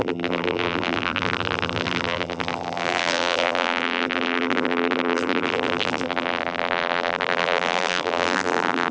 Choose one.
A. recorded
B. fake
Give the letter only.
B